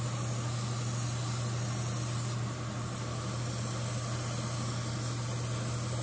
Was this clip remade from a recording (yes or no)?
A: no